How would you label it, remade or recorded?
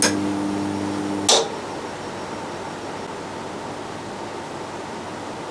recorded